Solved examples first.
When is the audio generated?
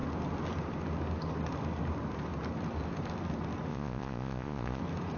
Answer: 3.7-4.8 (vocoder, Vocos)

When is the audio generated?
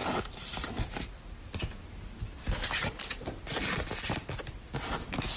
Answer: 0.0-1.6 (vocoder, BigVGAN v2)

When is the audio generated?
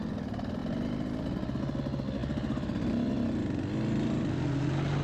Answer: 0.6-1.6 (vocoder, BigVGAN v2); 2.2-3.1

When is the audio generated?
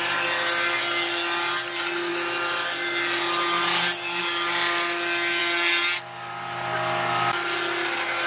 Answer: none